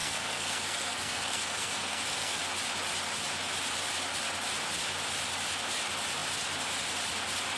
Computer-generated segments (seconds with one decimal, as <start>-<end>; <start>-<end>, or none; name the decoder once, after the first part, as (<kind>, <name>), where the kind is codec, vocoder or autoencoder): 0.0-2.4 (codec, SNAC)